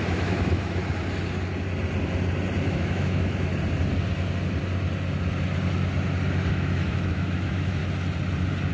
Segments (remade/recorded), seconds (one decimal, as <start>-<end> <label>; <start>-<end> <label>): 0.0-0.8 remade; 0.8-2.7 recorded; 2.7-3.5 remade; 3.5-6.5 recorded; 6.5-7.8 remade; 7.8-8.7 recorded